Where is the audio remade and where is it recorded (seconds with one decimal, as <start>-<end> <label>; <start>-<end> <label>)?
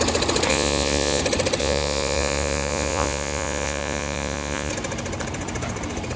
0.0-0.5 recorded; 0.5-1.2 remade; 1.2-1.6 recorded; 1.6-4.7 remade; 4.7-6.2 recorded